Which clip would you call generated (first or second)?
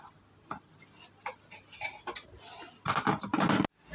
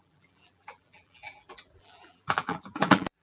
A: second